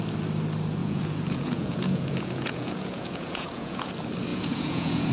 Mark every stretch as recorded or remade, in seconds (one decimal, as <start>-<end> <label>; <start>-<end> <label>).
0.0-0.8 recorded; 0.8-3.9 remade; 3.9-4.3 recorded; 4.3-5.1 remade